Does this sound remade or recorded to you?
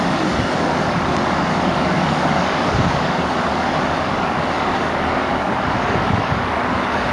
remade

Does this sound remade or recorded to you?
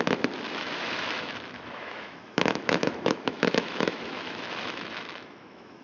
remade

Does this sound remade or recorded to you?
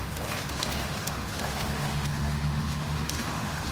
remade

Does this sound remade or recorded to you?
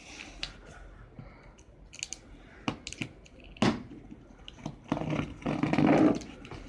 recorded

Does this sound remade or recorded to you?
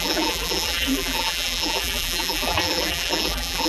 remade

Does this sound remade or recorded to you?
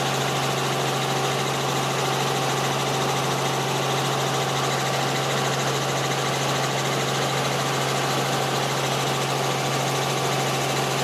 recorded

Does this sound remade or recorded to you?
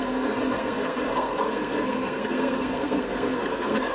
remade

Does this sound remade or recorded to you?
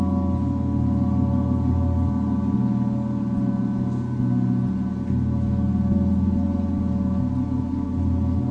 recorded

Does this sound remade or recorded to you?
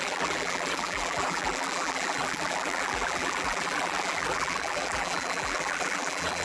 remade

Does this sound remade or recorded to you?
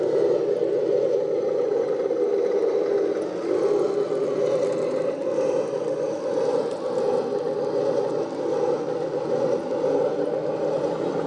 recorded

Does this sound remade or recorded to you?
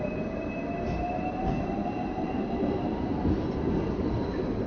remade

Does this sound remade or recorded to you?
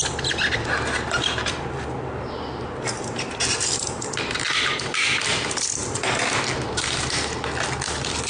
recorded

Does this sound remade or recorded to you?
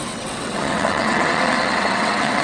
remade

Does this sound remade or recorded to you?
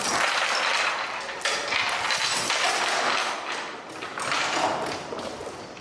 recorded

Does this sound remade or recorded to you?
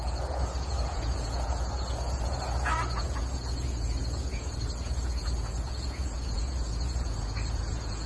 remade